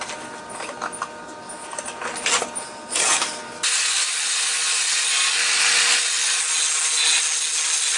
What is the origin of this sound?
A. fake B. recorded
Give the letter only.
B